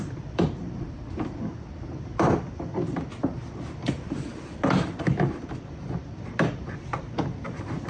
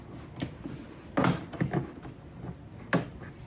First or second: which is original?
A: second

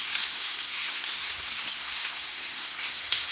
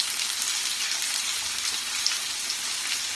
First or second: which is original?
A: second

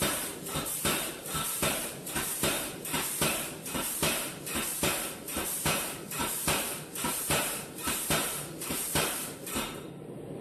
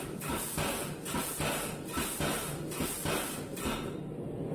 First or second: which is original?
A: second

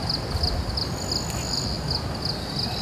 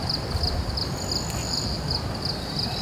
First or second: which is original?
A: first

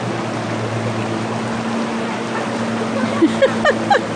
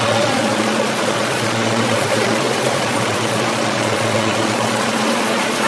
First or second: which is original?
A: first